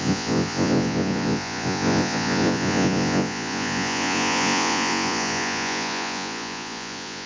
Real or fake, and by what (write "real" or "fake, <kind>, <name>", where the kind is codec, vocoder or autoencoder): fake, vocoder, Vocos